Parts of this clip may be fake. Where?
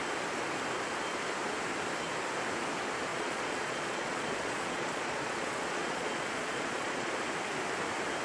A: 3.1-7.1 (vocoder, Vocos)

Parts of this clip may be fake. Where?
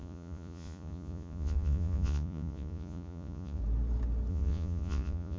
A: 0.0-3.6 (vocoder, Vocos); 4.3-5.4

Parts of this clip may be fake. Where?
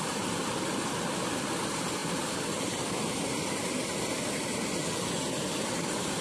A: none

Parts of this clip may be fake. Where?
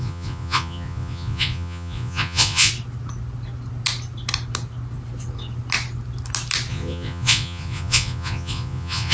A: 0.0-2.7 (vocoder, Vocos); 6.7-9.1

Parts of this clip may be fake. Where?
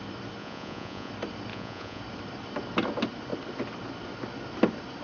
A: 0.4-1.1 (vocoder, Vocos); 1.5-2.0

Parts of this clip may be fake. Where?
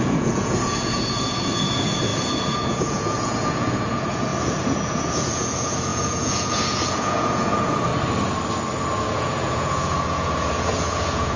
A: 0.0-7.9 (vocoder, Vocos); 9.0-11.4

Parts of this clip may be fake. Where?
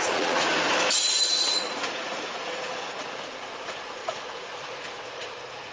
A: 0.0-0.5 (vocoder, Vocos); 1.6-5.7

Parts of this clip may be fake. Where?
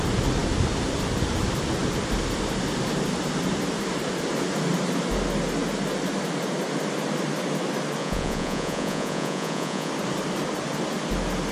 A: 8.0-9.9 (vocoder, Vocos)